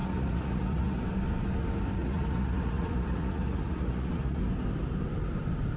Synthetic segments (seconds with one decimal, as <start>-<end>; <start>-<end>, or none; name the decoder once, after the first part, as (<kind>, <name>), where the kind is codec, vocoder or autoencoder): 0.0-1.0 (vocoder, Vocos); 2.0-4.4